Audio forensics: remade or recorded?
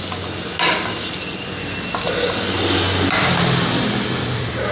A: recorded